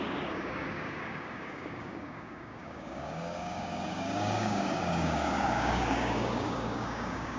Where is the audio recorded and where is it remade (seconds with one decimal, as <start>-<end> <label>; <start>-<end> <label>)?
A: 0.0-7.4 remade